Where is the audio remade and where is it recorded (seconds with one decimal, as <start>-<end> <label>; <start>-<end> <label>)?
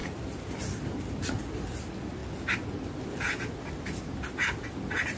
0.0-1.4 remade; 1.4-5.2 recorded